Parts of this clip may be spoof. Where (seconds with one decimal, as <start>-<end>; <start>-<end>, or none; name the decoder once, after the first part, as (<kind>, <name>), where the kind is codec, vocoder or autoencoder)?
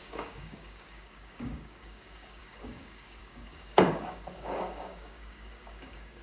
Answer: 0.0-6.2 (codec, DAC)